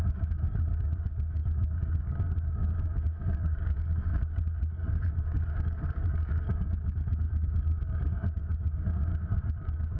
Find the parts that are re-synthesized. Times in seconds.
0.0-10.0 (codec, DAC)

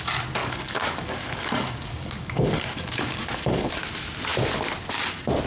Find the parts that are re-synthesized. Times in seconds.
0.4-3.7 (codec, DAC)

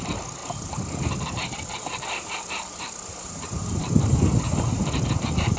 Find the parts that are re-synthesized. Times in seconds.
none

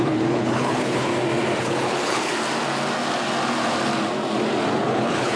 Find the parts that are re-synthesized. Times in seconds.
0.0-1.1 (codec, HILCodec); 1.6-2.3; 4.9-5.4

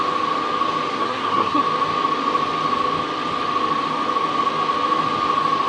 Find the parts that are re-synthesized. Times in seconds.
0.9-1.6 (codec, SNAC)

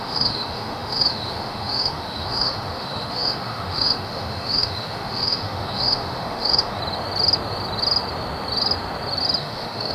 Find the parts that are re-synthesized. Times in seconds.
0.0-6.8 (autoencoder, DAC-VAE); 9.4-9.9

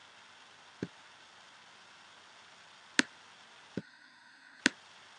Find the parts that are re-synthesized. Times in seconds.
3.8-4.6 (codec, SNAC)

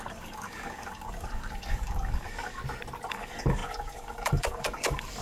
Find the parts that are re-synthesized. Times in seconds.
0.0-2.6 (codec, DAC); 3.1-5.2